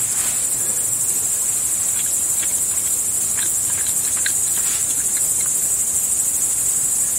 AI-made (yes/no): no